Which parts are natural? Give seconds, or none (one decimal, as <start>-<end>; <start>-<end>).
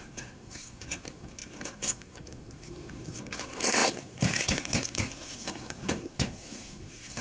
none